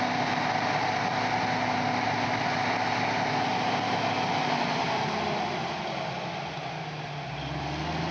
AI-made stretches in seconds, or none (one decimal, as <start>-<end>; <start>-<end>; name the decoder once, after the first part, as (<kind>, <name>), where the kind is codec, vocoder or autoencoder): none